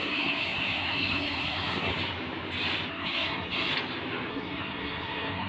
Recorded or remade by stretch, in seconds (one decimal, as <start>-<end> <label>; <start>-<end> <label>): 0.0-1.9 remade; 1.9-2.9 recorded; 2.9-3.7 remade; 3.7-4.3 recorded; 4.3-5.5 remade